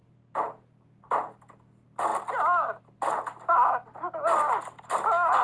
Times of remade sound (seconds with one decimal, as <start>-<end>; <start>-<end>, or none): none